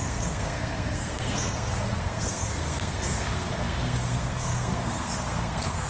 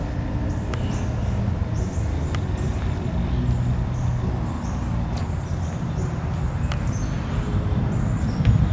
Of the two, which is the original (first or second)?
second